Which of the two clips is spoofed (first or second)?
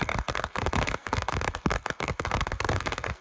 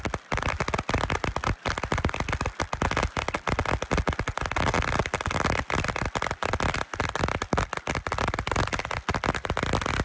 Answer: first